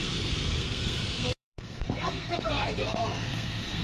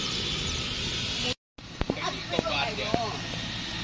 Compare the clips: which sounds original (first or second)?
second